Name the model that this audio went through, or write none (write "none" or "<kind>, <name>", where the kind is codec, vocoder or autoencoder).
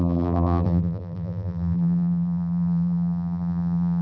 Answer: vocoder, BigVGAN v2